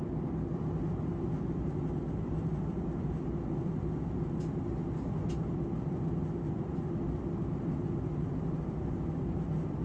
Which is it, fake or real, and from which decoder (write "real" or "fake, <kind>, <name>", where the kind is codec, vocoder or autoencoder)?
real